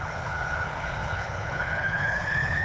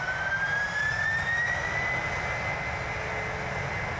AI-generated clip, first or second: first